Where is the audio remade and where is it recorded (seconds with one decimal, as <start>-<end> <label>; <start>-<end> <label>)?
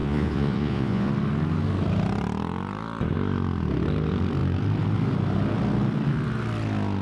0.0-1.1 remade; 1.1-7.0 recorded